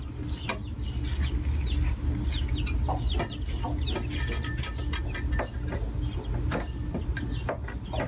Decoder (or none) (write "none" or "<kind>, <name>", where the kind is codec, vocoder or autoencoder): none